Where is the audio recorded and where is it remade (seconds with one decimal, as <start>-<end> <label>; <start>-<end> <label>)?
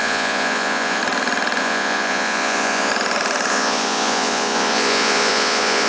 0.0-1.0 remade; 1.0-1.6 recorded; 1.6-2.9 remade; 2.9-3.5 recorded; 3.5-5.9 remade